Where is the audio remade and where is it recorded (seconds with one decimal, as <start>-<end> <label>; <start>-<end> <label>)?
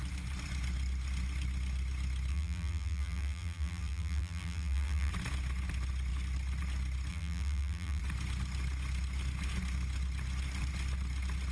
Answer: 0.0-2.3 recorded; 2.3-5.1 remade; 5.1-7.1 recorded; 7.1-8.0 remade; 8.0-11.5 recorded